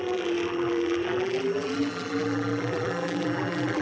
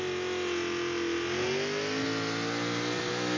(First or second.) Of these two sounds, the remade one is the first